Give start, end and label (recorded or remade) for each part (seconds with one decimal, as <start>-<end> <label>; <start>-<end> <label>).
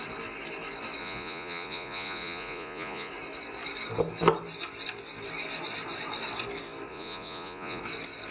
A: 0.0-1.0 recorded; 1.0-3.1 remade; 3.1-6.9 recorded; 6.9-7.8 remade; 7.8-8.3 recorded